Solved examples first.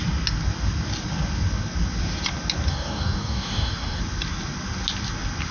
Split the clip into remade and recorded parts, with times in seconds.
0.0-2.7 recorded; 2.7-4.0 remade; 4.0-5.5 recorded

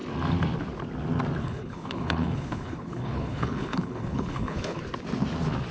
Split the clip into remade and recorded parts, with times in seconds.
0.0-1.4 recorded; 1.4-4.8 remade; 4.8-5.7 recorded